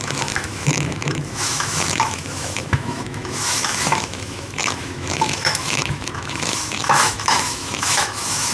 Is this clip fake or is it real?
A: fake